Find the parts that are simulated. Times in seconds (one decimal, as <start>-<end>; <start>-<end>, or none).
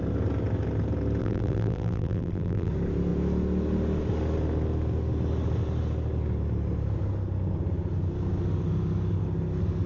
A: 1.2-2.7